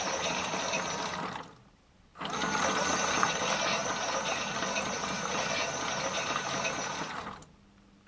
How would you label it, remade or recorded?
recorded